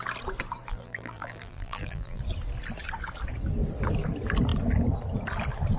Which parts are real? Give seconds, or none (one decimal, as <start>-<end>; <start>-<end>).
0.0-0.7; 2.2-5.8